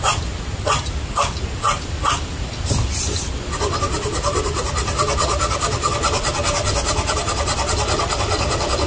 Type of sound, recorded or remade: recorded